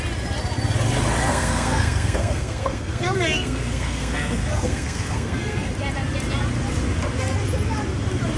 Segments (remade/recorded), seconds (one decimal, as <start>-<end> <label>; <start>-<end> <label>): 0.0-1.3 recorded; 1.3-5.7 remade; 5.7-8.4 recorded